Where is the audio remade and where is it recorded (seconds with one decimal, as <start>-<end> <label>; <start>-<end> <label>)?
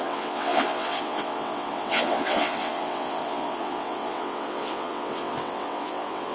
0.0-6.3 remade